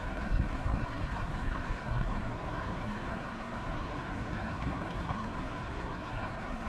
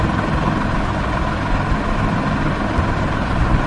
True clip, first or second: second